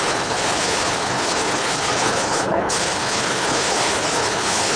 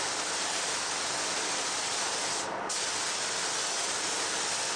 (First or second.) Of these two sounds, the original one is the second